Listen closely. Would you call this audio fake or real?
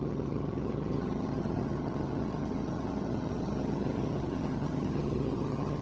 fake